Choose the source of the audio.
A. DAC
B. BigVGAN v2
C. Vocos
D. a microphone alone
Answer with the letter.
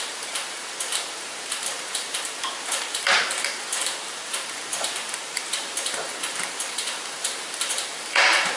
B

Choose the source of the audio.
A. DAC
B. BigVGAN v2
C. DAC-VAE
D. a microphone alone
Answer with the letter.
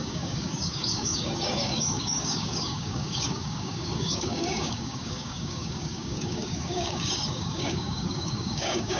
A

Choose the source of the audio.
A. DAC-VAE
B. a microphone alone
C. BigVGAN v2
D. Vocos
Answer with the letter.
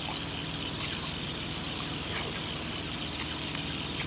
B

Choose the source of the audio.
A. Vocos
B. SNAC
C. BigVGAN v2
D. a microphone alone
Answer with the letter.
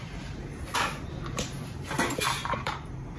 C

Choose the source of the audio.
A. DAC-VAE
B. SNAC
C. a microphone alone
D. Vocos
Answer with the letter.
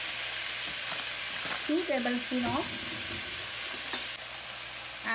C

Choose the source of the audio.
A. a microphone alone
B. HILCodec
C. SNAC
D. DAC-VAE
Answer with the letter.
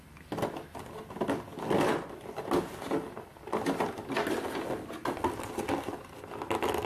A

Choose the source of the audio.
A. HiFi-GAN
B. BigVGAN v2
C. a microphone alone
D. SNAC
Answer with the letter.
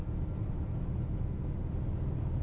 C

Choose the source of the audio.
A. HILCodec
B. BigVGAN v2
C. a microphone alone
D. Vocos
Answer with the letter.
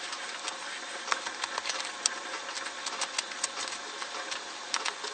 C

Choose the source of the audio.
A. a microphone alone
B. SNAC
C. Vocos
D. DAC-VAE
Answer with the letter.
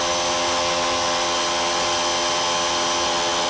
A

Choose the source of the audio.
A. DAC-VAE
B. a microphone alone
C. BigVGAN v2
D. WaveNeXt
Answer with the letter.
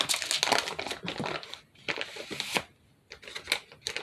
B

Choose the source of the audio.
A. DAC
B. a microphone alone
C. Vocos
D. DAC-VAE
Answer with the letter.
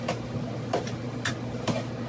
B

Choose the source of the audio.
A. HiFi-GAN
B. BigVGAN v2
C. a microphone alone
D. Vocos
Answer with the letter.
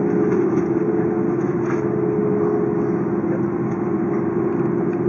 C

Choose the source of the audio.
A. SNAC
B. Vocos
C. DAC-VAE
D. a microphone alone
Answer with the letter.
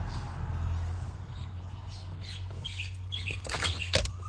A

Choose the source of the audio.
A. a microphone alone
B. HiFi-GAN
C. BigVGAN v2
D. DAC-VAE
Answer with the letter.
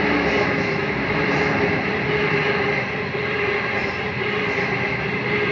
A